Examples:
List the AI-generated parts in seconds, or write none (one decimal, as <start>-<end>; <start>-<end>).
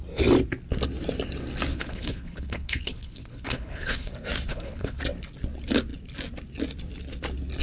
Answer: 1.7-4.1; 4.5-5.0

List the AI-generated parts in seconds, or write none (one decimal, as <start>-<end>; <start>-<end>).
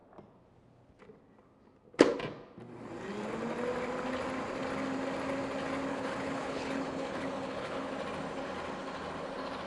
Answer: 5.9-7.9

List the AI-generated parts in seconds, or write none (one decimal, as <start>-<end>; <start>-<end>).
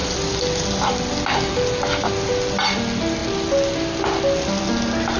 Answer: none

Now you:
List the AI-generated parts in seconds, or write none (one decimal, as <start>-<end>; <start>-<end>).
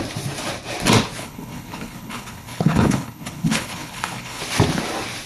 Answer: 1.2-4.4